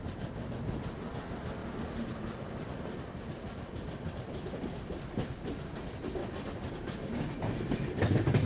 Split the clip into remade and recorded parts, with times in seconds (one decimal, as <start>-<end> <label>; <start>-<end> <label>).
0.0-8.5 recorded